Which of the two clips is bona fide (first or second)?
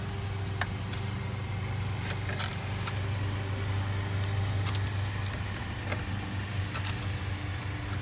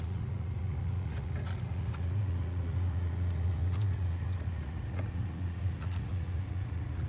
first